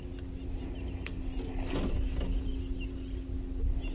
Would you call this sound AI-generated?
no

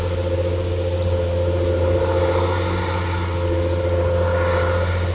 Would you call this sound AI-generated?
no